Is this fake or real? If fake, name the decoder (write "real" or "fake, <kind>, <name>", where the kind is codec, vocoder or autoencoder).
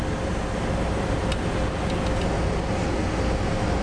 real